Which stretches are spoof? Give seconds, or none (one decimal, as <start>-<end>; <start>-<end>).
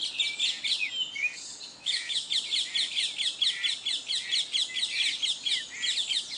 1.7-2.3